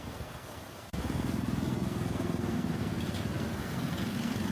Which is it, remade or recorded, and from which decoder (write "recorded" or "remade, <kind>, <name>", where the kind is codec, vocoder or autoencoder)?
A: remade, codec, SNAC